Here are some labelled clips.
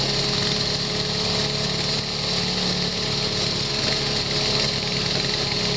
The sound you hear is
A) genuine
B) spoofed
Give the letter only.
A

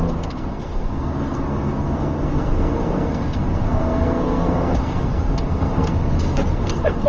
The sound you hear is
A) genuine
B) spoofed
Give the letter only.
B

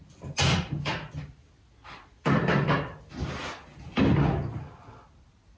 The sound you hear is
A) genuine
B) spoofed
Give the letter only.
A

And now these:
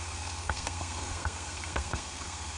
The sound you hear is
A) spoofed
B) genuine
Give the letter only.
A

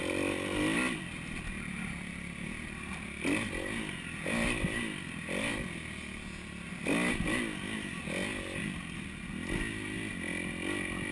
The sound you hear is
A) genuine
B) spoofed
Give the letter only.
A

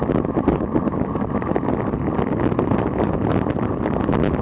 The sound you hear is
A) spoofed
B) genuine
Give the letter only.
B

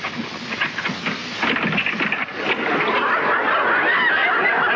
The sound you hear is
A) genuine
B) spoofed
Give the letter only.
A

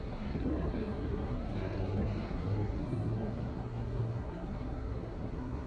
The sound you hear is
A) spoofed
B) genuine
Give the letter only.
A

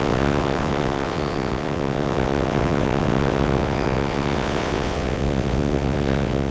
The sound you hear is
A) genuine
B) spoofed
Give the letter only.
B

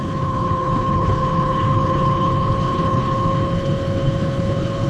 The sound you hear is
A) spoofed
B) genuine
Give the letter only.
A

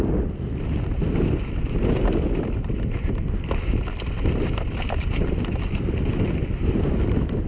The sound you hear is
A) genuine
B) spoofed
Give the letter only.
A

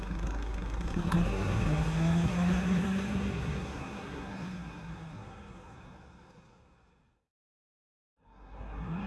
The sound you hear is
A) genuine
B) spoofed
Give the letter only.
B